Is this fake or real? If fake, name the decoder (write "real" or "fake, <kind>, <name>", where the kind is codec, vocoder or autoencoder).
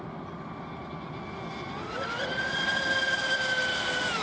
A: real